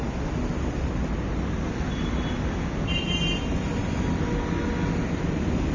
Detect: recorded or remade recorded